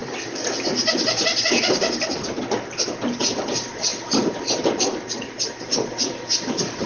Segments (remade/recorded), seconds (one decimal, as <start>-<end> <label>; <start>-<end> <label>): 0.0-3.5 recorded; 3.5-6.9 remade